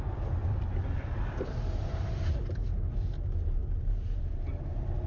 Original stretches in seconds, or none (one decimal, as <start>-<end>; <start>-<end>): 0.0-0.4; 2.6-5.1